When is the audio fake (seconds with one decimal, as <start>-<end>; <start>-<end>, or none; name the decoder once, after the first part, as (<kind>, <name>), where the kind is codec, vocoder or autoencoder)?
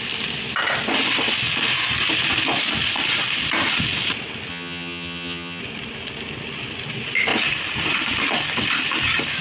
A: 4.5-5.6 (vocoder, HiFi-GAN)